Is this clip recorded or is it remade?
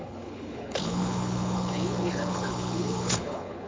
remade